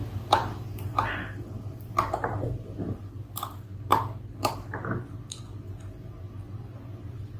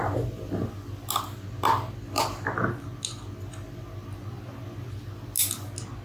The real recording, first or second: second